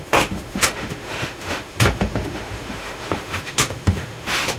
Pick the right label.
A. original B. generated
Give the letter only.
B